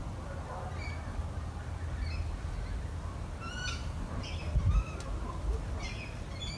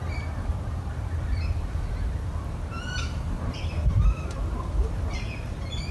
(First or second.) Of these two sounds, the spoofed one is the second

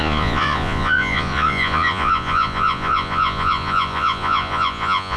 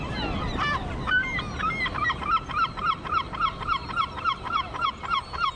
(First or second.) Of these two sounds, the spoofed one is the first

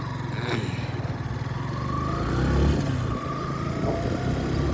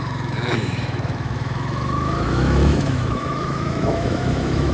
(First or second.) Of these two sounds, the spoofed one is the second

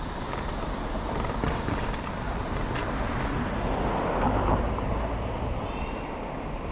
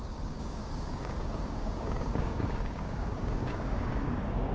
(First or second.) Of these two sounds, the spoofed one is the second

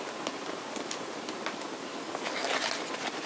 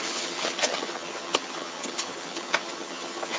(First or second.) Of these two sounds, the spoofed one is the second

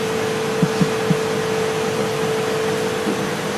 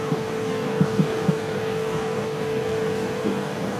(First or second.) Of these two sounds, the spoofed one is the second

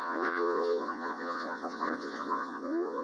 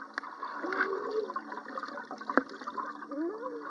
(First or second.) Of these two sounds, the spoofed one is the first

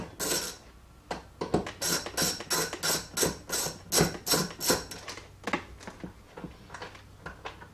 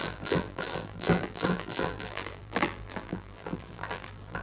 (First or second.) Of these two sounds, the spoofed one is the second